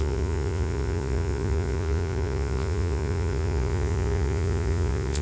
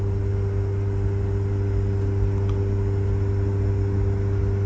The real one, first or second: second